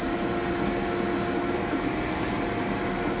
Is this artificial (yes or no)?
no